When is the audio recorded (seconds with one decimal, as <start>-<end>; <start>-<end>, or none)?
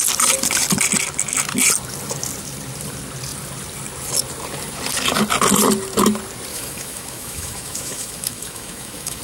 0.0-6.5